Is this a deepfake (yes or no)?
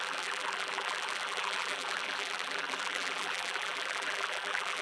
yes